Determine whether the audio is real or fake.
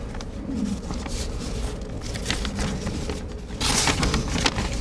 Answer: real